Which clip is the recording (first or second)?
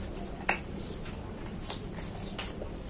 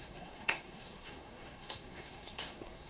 first